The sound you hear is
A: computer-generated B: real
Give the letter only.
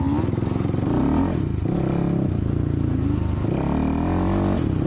B